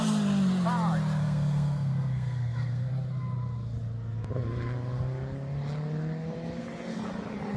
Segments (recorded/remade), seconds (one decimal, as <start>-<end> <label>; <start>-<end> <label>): 0.0-1.2 recorded; 1.2-2.9 remade; 2.9-7.6 recorded